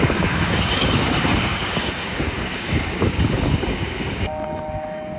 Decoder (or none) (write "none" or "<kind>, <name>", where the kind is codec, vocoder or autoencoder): codec, DAC